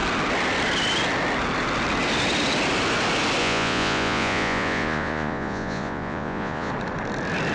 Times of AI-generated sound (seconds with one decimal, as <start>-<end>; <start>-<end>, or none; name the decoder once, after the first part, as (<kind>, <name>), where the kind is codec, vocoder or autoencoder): 3.4-6.7 (vocoder, Vocos)

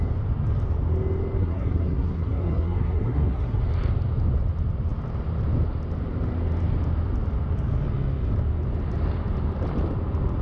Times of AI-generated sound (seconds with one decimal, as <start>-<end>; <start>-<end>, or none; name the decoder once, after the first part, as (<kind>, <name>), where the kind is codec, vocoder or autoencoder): 1.4-3.6 (codec, SNAC)

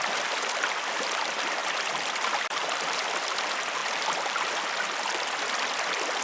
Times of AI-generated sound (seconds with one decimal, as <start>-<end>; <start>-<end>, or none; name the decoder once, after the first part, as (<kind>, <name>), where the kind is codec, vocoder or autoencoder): none

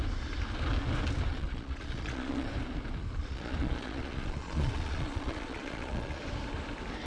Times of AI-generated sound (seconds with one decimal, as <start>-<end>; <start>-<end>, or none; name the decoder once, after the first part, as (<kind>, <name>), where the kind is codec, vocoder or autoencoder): 1.3-2.5 (vocoder, Vocos); 3.2-6.2

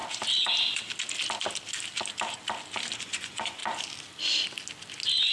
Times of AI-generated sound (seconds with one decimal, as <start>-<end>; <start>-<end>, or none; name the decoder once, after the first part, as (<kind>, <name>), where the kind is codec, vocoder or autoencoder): 3.0-3.6 (vocoder, Vocos)